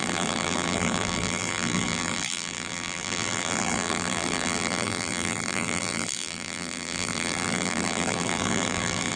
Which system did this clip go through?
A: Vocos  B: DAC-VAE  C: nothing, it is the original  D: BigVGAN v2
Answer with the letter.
D